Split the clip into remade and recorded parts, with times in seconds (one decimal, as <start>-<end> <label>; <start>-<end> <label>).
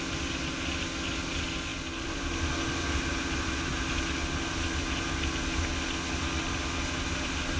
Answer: 0.0-7.6 recorded